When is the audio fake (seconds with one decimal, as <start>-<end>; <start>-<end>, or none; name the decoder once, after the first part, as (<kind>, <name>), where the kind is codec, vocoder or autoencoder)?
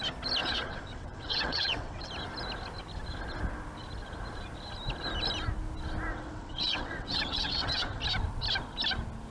0.4-2.1 (vocoder, WaveNeXt); 6.1-8.0